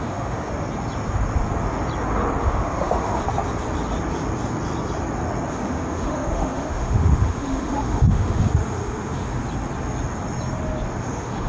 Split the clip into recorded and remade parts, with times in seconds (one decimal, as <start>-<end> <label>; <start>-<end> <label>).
0.0-0.5 remade; 0.5-2.4 recorded; 2.4-3.2 remade; 3.2-5.5 recorded; 5.5-9.4 remade; 9.4-11.0 recorded; 11.0-11.5 remade